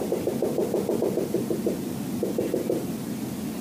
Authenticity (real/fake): real